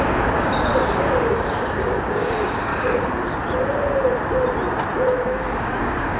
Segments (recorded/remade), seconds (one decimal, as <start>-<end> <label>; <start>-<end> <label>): 0.0-0.7 remade; 0.7-1.3 recorded; 1.3-2.7 remade; 2.7-5.1 recorded; 5.1-6.2 remade